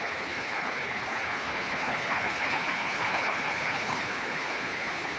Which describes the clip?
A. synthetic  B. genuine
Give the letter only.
A